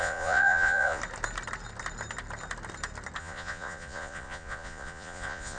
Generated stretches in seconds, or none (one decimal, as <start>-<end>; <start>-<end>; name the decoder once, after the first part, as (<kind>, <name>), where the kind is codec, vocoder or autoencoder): 0.0-1.0 (vocoder, Vocos); 3.2-5.6